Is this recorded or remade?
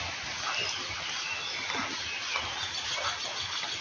recorded